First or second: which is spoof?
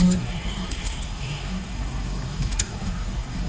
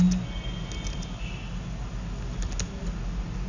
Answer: first